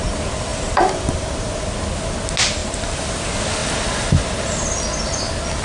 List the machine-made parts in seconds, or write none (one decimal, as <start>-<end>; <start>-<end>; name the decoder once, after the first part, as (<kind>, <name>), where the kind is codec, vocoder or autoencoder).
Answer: 0.5-1.5 (vocoder, BigVGAN v2); 2.6-3.2